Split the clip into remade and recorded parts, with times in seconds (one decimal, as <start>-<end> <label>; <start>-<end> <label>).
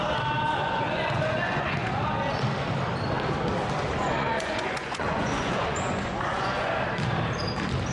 0.0-0.6 recorded; 0.6-2.0 remade; 2.0-4.0 recorded; 4.0-6.7 remade; 6.7-7.9 recorded